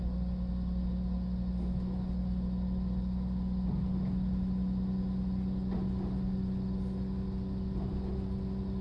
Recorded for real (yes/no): yes